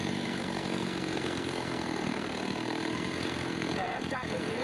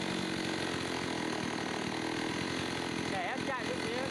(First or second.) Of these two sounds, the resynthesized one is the first